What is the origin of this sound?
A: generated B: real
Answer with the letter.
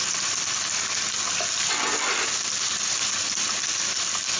B